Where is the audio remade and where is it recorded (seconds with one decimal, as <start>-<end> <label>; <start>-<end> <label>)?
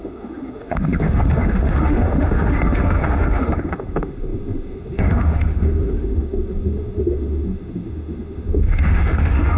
0.0-9.6 remade